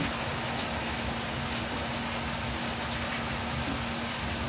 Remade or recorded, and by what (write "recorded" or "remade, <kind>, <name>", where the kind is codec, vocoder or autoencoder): recorded